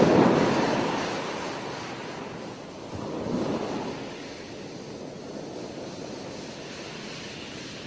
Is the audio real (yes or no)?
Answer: yes